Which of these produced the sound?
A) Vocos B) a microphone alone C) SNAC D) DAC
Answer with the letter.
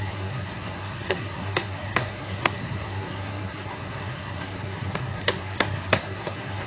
C